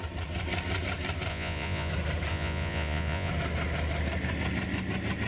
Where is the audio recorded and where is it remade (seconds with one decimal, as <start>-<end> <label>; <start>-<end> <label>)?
0.0-1.3 recorded; 1.3-1.9 remade; 1.9-2.3 recorded; 2.3-3.3 remade; 3.3-5.3 recorded